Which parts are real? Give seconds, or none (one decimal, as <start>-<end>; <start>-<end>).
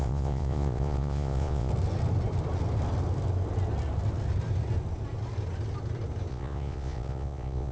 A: 1.7-6.3